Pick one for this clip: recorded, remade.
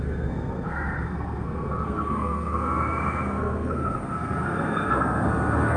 remade